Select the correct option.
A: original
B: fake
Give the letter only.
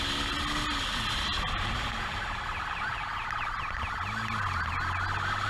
A